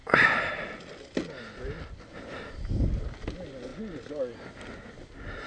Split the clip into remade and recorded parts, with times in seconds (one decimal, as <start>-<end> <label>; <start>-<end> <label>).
0.0-0.6 remade; 0.6-2.1 recorded; 2.1-2.9 remade; 2.9-5.5 recorded